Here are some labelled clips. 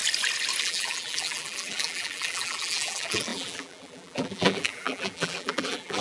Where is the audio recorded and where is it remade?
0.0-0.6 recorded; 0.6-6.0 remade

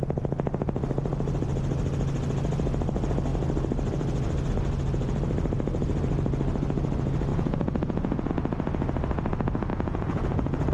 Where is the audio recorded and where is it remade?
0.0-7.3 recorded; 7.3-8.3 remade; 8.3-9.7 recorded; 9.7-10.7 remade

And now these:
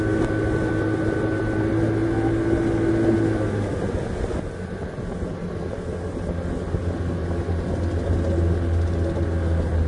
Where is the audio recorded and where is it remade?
0.0-9.9 recorded

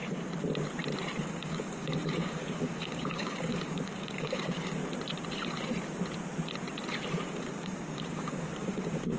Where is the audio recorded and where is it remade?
0.0-1.2 recorded; 1.2-4.8 remade; 4.8-7.3 recorded; 7.3-9.2 remade

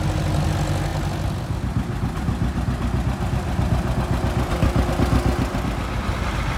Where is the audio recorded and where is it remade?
0.0-6.6 recorded